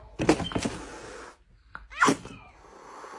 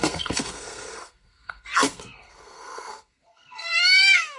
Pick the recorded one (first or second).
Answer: first